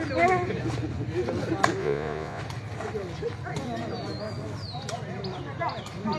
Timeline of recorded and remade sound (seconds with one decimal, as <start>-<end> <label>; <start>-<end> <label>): 0.0-1.8 recorded; 1.8-2.4 remade; 2.4-6.2 recorded